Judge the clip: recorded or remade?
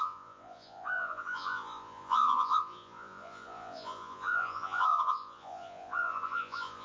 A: remade